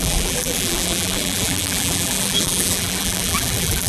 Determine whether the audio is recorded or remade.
remade